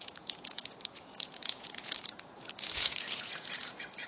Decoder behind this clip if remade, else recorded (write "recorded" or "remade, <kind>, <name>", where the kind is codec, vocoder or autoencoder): remade, vocoder, Vocos